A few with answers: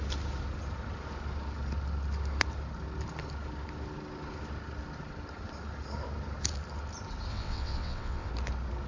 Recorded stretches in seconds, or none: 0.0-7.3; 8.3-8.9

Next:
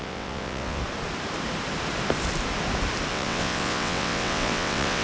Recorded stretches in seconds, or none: 0.8-3.1

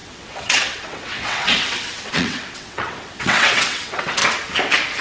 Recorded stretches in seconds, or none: 4.2-5.0

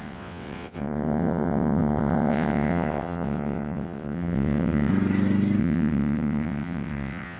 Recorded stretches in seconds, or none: 4.9-5.6

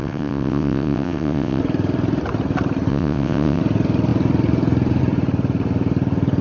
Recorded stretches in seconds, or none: 1.6-2.9; 3.6-6.4

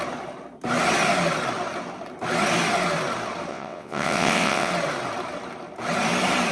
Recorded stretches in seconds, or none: 0.0-3.5; 4.7-6.5

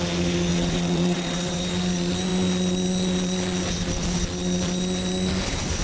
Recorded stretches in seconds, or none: 0.0-0.5; 1.6-5.8